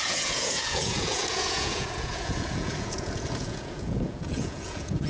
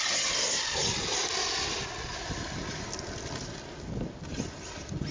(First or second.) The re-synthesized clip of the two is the first